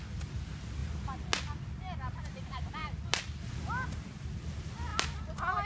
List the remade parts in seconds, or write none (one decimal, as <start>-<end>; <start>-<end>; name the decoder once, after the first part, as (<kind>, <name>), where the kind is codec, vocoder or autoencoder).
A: none